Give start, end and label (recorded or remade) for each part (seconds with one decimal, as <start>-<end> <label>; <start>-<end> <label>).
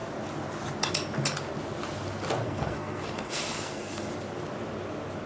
0.0-2.4 recorded; 2.4-4.1 remade; 4.1-5.3 recorded